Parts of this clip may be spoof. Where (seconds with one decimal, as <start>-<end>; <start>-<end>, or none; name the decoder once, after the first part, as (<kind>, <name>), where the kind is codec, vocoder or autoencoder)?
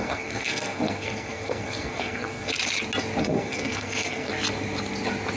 0.0-2.5 (codec, SNAC); 3.2-4.3